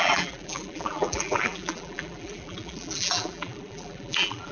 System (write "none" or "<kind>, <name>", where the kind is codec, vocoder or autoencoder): vocoder, BigVGAN v2